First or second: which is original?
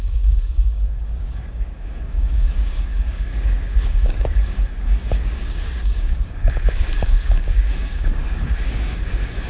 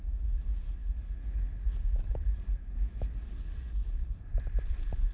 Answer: second